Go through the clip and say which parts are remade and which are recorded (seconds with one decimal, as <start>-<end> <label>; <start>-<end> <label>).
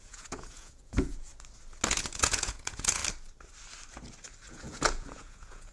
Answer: 0.0-1.3 remade; 1.3-1.9 recorded; 1.9-3.0 remade; 3.0-4.5 recorded; 4.5-5.7 remade